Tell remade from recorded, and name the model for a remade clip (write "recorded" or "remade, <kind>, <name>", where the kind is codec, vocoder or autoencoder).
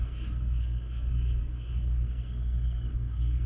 remade, codec, SNAC